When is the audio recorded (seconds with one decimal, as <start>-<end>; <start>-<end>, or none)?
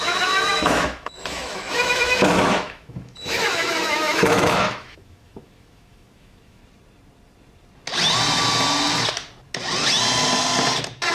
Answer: 6.6-11.1